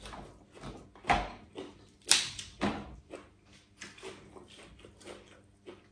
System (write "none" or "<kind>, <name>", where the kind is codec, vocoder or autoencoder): none